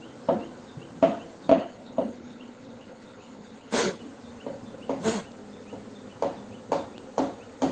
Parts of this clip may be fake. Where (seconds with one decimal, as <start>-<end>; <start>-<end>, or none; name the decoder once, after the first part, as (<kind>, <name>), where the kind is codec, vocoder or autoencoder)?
1.5-4.0 (codec, HILCodec)